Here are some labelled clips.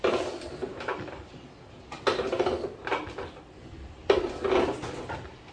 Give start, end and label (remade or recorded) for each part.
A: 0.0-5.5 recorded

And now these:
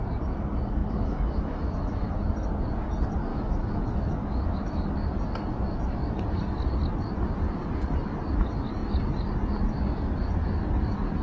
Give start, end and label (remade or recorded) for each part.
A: 0.0-0.8 recorded; 0.8-2.2 remade; 2.2-3.3 recorded; 3.3-4.9 remade; 4.9-11.2 recorded

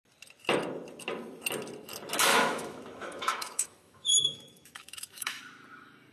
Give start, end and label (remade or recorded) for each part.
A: 0.0-2.3 recorded; 2.3-5.4 remade; 5.4-6.1 recorded

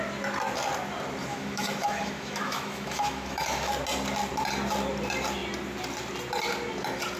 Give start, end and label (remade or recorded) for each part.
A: 0.0-1.3 recorded; 1.3-3.7 remade; 3.7-7.2 recorded

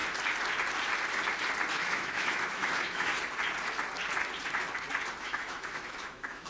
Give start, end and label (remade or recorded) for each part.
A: 0.0-1.7 recorded; 1.7-3.1 remade; 3.1-5.2 recorded; 5.2-6.5 remade

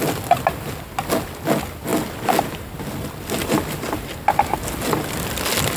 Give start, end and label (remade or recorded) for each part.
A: 0.0-5.8 recorded

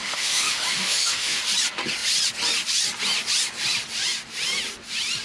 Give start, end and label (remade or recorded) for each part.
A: 0.0-1.4 remade; 1.4-5.2 recorded